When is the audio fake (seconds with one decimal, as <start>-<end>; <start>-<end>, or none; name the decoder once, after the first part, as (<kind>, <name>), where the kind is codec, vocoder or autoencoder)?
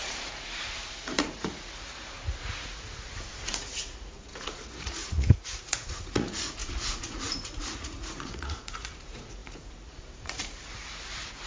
0.0-11.5 (vocoder, Vocos)